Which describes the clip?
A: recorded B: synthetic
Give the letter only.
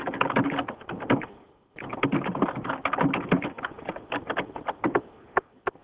A